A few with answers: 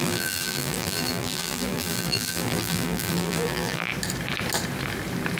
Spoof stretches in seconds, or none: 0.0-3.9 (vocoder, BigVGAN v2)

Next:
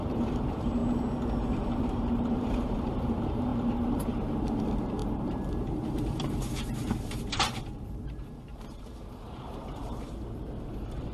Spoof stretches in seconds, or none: 0.0-0.8 (vocoder, BigVGAN v2); 1.8-11.1

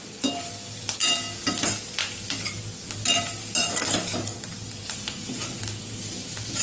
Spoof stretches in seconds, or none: none